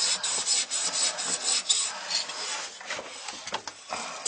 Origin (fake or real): real